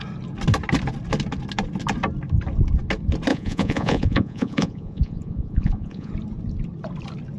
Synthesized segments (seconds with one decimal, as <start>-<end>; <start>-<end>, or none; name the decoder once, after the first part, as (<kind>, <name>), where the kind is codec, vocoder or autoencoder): 3.3-6.1 (vocoder, Vocos)